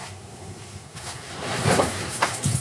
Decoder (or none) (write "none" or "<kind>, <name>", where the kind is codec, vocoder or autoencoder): codec, SNAC